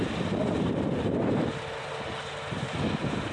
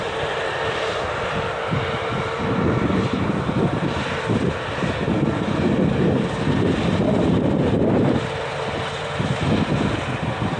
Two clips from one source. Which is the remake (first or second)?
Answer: second